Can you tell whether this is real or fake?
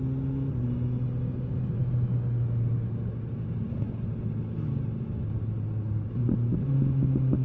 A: real